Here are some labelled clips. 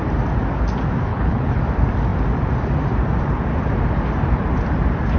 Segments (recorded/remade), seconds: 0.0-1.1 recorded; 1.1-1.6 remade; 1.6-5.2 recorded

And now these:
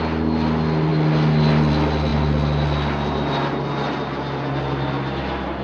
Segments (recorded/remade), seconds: 0.0-5.6 recorded